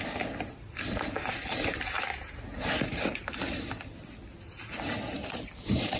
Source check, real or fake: real